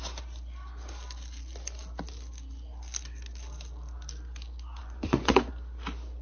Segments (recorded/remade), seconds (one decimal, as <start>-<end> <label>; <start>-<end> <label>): 0.0-4.8 recorded; 4.8-5.5 remade; 5.5-6.2 recorded